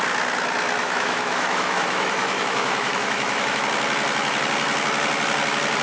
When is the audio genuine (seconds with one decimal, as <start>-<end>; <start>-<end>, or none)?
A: 0.0-0.8; 3.6-5.8